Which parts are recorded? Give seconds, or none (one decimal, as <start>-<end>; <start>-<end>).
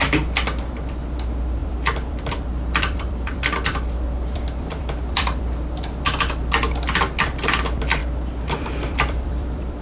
0.0-1.6; 5.4-8.0